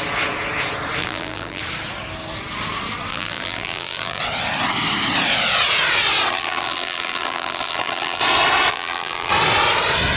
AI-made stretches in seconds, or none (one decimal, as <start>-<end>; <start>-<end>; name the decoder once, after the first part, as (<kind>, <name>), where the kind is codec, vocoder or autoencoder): 1.0-1.6 (vocoder, BigVGAN v2); 3.1-4.2; 6.3-8.2; 8.7-9.3